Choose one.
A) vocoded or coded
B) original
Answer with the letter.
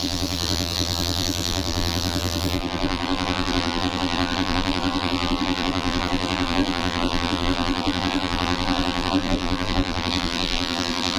A